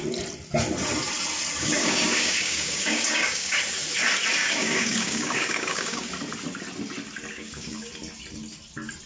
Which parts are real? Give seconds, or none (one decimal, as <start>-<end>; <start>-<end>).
0.0-1.6; 3.6-4.4; 6.1-7.3; 7.9-9.1